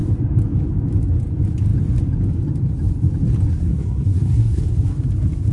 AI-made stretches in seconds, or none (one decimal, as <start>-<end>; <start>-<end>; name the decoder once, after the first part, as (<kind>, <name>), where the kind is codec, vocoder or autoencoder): 3.5-4.6 (codec, SNAC)